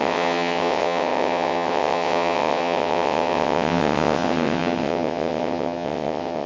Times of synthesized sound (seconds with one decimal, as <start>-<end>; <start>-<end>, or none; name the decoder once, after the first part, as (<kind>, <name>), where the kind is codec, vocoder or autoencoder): 0.0-6.5 (vocoder, WaveNeXt)